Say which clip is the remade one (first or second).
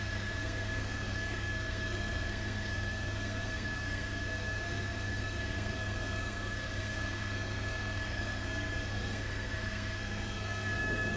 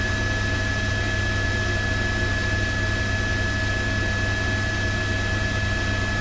first